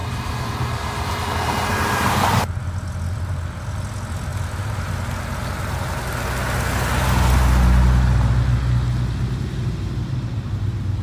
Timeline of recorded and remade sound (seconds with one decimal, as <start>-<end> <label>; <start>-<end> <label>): 0.0-1.9 remade; 1.9-4.3 recorded; 4.3-4.9 remade; 4.9-11.0 recorded